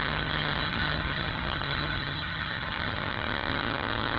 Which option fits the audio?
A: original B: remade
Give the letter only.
B